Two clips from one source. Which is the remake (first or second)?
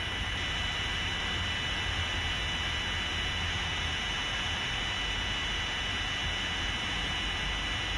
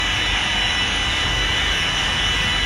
second